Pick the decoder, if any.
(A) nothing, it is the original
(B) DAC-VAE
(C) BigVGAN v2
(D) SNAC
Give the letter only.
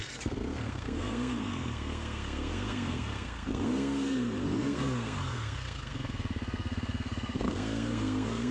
D